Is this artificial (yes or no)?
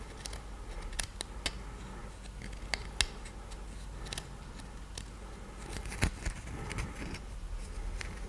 no